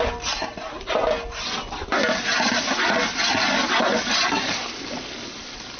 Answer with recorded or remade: recorded